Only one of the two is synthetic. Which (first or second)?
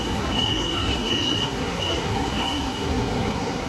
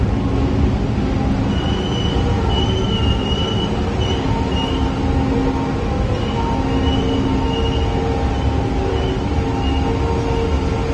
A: first